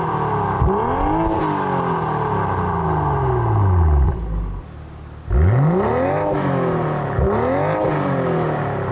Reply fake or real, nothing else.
real